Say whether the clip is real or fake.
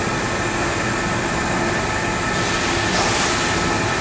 real